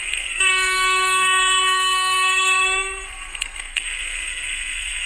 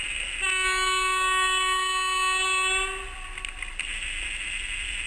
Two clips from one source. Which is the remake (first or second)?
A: first